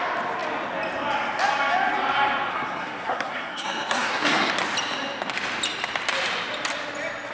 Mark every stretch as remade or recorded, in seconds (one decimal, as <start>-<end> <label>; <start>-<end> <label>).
0.0-2.5 recorded; 2.5-4.5 remade; 4.5-7.3 recorded